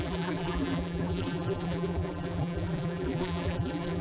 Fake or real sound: fake